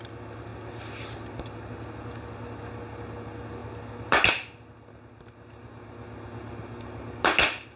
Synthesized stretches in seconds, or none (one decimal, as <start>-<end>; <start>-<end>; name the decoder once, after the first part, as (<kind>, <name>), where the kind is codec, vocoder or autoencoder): none